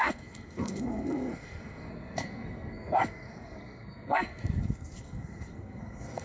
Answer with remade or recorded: remade